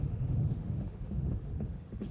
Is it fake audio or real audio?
fake